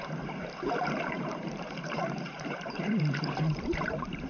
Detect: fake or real fake